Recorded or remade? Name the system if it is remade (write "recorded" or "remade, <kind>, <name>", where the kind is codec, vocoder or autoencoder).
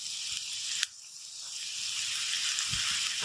recorded